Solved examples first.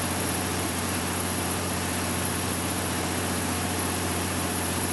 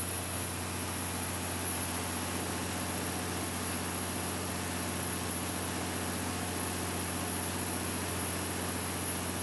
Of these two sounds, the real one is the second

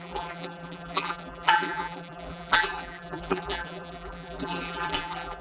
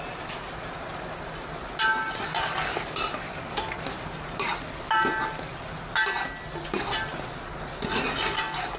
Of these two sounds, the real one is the second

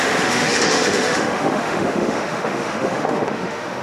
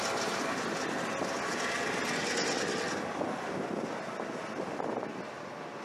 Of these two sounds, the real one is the second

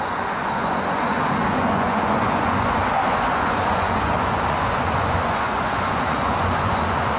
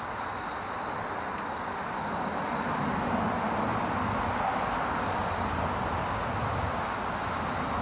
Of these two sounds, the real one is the second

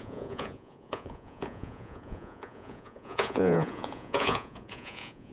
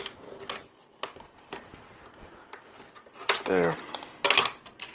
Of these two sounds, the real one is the second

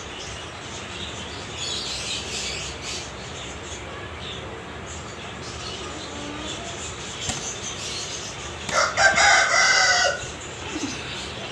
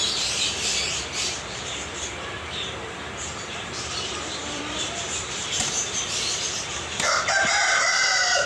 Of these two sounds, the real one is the first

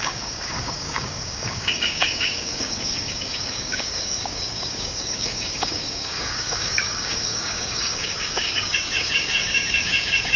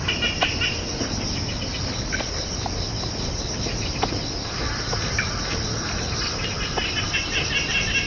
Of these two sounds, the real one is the second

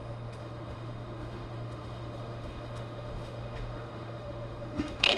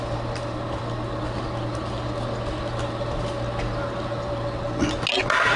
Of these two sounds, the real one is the second